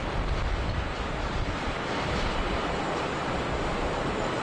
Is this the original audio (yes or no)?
no